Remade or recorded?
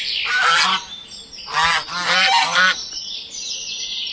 recorded